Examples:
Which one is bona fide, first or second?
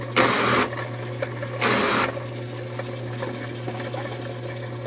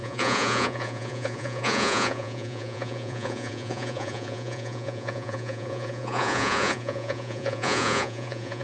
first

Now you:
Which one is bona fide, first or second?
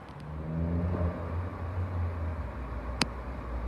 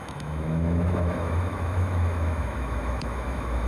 first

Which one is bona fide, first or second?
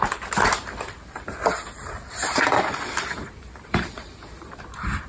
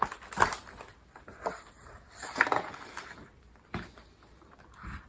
second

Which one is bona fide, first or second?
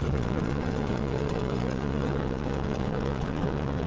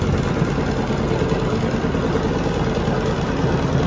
second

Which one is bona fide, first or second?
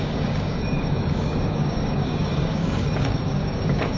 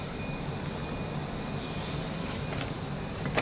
second